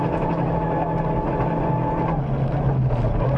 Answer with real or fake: real